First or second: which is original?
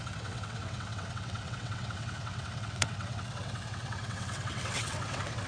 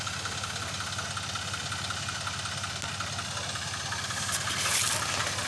second